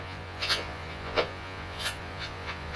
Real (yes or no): no